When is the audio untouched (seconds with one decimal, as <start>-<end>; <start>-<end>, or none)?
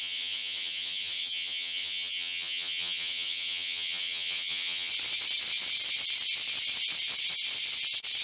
4.9-8.2